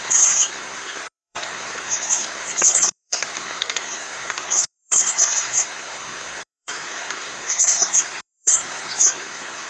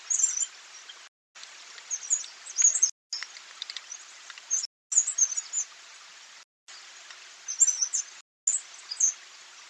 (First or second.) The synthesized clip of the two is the first